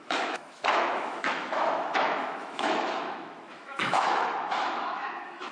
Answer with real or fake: fake